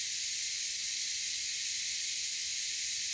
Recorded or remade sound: recorded